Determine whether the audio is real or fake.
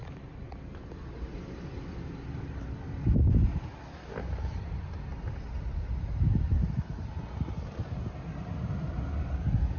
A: real